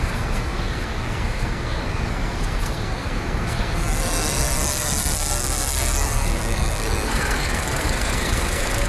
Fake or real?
fake